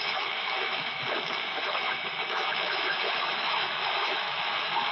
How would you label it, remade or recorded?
remade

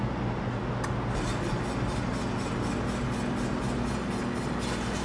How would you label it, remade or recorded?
recorded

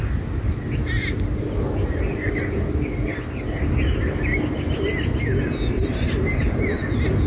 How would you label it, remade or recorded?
recorded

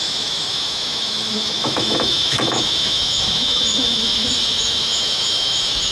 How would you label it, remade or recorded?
remade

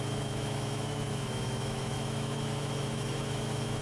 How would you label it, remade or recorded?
remade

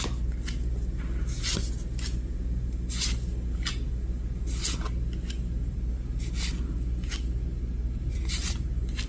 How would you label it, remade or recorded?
recorded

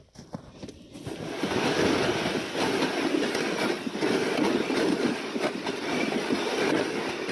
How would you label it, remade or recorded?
recorded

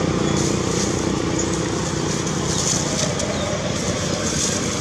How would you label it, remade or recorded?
recorded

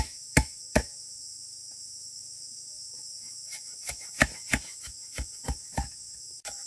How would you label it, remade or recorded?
remade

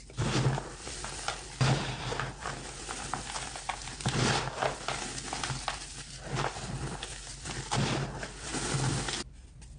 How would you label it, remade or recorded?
recorded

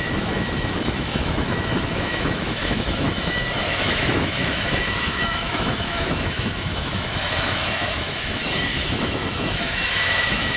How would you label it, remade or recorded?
remade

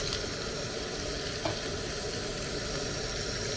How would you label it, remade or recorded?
recorded